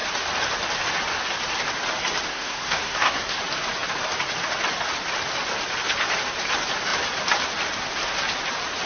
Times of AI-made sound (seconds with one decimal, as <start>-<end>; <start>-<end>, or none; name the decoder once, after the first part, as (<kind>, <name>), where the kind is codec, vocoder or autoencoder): 2.3-3.4 (codec, SNAC)